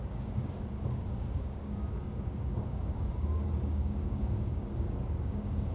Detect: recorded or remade remade